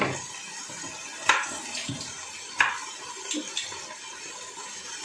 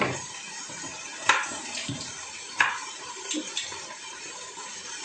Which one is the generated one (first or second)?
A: second